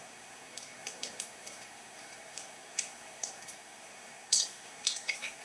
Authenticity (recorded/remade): remade